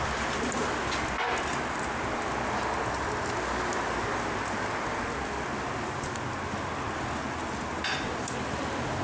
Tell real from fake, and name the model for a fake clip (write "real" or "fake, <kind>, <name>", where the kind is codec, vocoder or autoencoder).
real